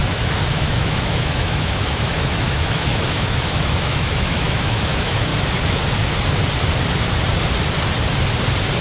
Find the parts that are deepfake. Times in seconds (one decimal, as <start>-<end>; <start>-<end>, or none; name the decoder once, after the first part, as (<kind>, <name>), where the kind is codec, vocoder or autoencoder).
0.0-5.3 (autoencoder, DAC-VAE)